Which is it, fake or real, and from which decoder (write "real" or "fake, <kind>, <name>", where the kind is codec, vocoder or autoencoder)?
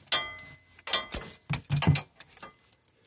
real